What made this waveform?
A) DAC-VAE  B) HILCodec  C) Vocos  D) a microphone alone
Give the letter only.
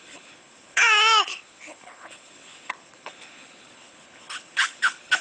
B